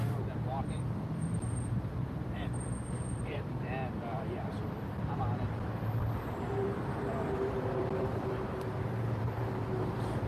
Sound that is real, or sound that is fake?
fake